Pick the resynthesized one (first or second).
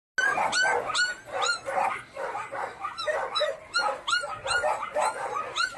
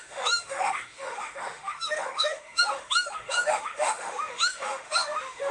second